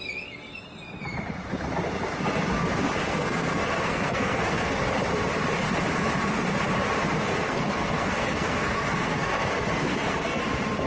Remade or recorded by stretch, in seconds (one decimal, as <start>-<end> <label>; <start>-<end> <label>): 0.0-3.0 recorded; 3.0-4.8 remade; 4.8-7.2 recorded; 7.2-10.4 remade; 10.4-10.9 recorded